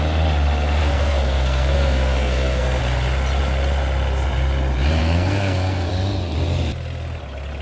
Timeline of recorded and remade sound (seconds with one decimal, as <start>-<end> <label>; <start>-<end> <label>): 0.0-0.8 recorded; 0.8-2.8 remade; 2.8-5.0 recorded; 5.0-5.9 remade; 5.9-7.6 recorded